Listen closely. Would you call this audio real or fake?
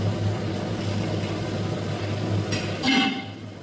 real